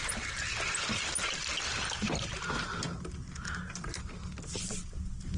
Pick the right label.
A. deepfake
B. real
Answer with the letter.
B